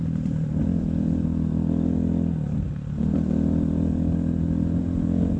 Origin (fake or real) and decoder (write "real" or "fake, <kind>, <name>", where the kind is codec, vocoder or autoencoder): real